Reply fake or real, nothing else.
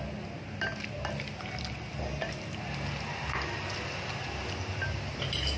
real